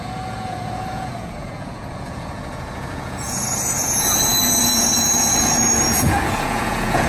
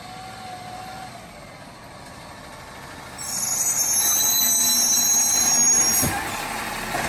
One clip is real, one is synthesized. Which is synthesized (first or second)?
first